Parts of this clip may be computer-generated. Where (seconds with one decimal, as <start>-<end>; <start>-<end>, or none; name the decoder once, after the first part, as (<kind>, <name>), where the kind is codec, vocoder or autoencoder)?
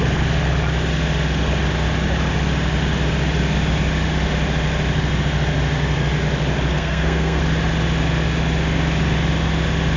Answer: 6.7-7.4 (codec, SNAC)